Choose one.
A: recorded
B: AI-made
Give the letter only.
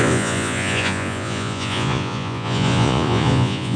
B